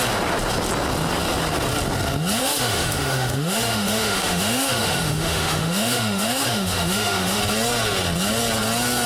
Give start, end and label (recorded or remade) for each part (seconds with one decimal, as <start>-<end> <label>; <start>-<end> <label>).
0.0-2.4 recorded; 2.4-7.4 remade; 7.4-9.1 recorded